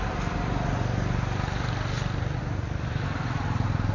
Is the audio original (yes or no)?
yes